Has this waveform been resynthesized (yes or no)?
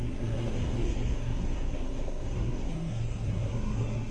yes